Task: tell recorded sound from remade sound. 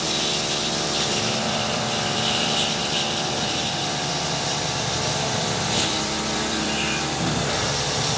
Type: remade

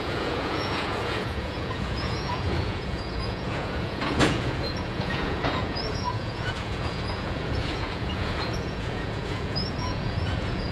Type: remade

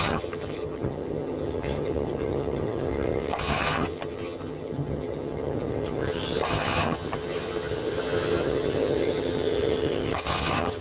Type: remade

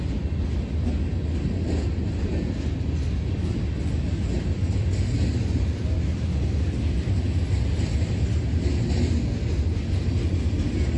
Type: recorded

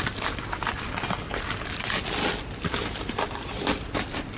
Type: recorded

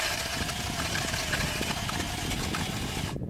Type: recorded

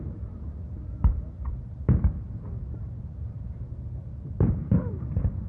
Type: remade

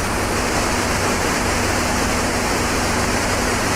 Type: remade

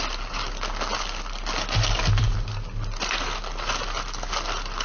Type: recorded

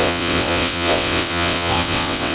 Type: remade